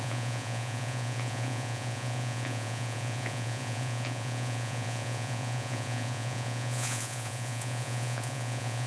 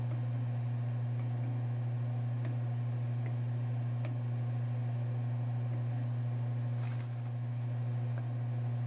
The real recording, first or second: second